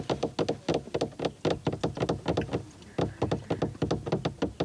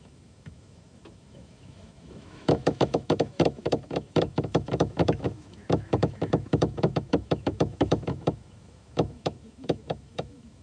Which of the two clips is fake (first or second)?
second